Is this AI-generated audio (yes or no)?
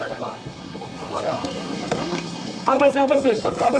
yes